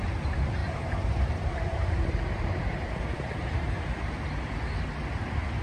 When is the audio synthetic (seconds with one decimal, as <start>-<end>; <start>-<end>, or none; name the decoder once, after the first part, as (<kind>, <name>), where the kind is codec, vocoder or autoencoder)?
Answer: 0.6-4.0 (vocoder, BigVGAN v2)